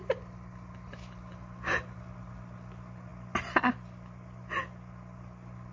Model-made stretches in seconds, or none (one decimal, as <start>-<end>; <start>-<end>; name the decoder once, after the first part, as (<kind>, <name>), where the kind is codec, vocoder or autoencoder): none